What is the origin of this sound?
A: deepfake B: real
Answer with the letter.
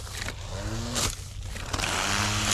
B